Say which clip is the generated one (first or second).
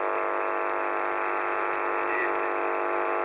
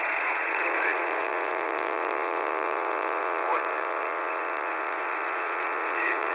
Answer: second